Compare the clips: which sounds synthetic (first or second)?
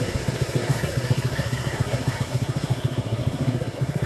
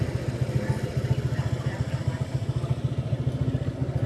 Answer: first